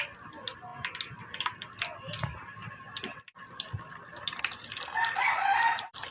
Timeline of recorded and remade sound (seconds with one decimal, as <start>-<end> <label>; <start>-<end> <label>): 0.0-0.7 recorded; 0.7-4.4 remade; 4.4-6.1 recorded